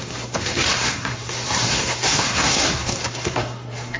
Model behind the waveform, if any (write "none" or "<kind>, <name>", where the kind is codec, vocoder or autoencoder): codec, SNAC